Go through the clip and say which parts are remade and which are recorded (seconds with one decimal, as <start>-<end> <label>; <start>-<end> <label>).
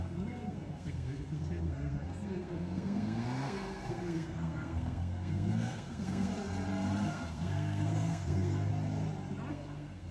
0.0-6.3 remade; 6.3-7.1 recorded; 7.1-8.7 remade; 8.7-9.5 recorded; 9.5-10.1 remade